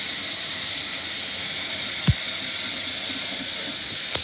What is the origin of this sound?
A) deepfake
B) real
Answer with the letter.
B